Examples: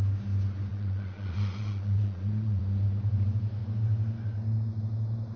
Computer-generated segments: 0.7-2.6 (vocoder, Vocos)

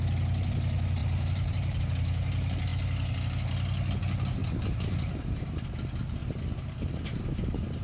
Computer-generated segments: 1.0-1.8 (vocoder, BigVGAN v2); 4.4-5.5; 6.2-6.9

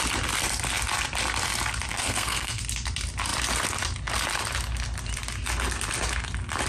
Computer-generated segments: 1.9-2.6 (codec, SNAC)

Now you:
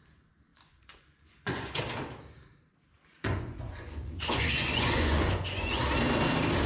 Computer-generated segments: 0.5-1.8 (vocoder, Vocos); 3.1-5.8